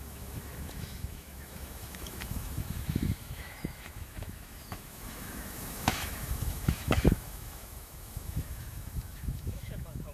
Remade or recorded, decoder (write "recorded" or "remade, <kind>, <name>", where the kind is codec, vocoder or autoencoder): remade, autoencoder, DAC-VAE